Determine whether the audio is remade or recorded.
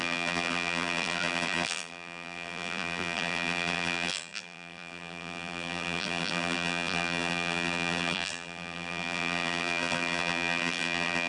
remade